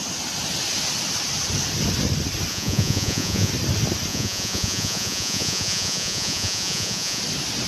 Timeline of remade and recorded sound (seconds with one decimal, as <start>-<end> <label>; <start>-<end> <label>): 0.0-2.5 recorded; 2.5-3.5 remade; 3.5-4.1 recorded; 4.1-7.2 remade; 7.2-7.7 recorded